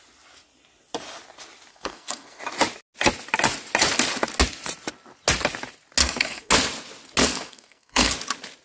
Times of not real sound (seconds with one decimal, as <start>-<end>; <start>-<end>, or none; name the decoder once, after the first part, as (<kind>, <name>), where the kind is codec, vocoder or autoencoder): 1.7-2.4 (codec, SNAC); 6.0-6.5; 7.2-8.1